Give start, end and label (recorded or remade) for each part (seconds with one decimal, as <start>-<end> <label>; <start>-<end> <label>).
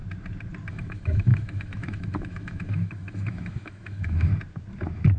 0.0-0.7 recorded; 0.7-4.3 remade; 4.3-5.2 recorded